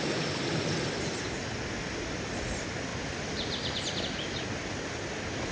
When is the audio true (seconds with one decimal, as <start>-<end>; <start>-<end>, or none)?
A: 0.0-2.9; 4.0-5.5